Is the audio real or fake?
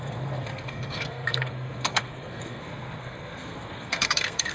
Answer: fake